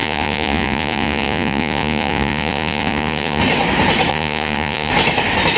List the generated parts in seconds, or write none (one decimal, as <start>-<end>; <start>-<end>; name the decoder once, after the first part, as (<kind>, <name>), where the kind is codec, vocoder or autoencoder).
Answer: 0.0-3.4 (vocoder, Vocos); 4.1-4.9